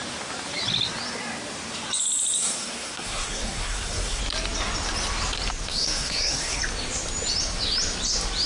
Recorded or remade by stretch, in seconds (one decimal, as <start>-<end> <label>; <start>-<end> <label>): 0.0-2.4 recorded; 2.4-4.2 remade; 4.2-5.7 recorded; 5.7-6.6 remade; 6.6-8.5 recorded